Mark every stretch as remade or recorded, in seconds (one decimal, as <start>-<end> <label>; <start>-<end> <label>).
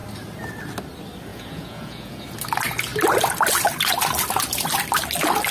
0.0-1.3 recorded; 1.3-2.2 remade; 2.2-5.5 recorded